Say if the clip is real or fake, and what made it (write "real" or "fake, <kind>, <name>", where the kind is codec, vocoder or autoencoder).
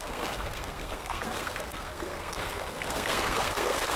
fake, codec, SNAC